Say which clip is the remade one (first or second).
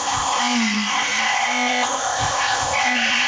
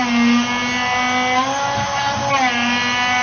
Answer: first